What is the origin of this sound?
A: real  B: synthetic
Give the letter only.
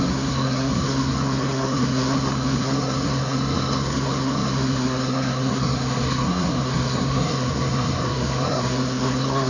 B